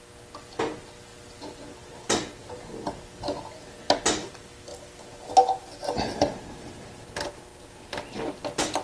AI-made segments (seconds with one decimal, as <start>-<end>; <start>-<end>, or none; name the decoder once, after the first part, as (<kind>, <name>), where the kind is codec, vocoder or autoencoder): none